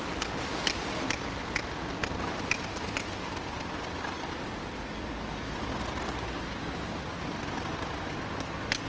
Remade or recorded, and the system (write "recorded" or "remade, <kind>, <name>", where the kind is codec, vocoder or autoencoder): recorded